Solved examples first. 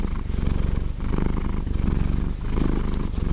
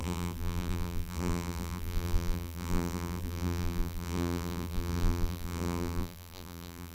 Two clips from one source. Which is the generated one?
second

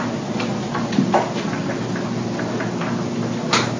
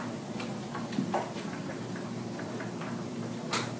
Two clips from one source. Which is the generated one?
second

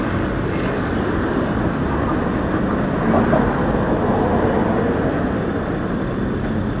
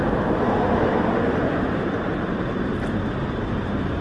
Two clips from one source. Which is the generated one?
second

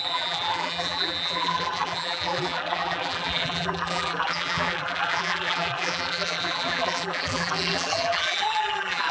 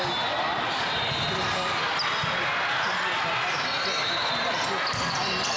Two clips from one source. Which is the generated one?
first